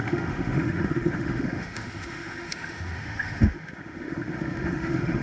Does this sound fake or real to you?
fake